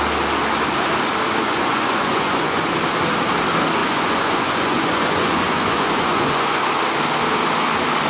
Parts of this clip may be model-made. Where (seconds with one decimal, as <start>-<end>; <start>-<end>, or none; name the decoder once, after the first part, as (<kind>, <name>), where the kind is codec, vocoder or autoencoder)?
1.4-2.6 (vocoder, Vocos); 3.8-6.6